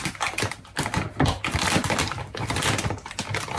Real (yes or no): yes